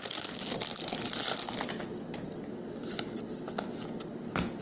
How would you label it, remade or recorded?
recorded